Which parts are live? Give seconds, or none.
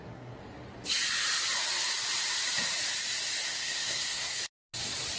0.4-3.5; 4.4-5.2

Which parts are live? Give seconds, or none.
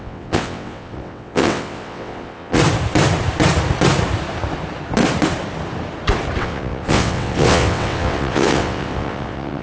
2.6-6.4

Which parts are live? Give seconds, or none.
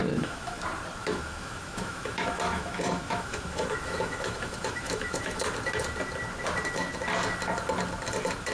0.6-1.0; 5.4-8.5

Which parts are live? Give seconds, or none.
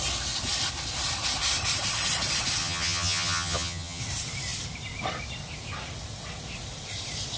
0.0-2.6; 4.0-7.4